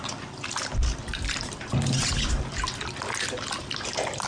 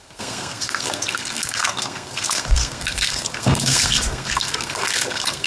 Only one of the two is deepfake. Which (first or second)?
second